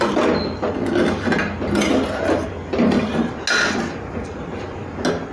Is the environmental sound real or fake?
real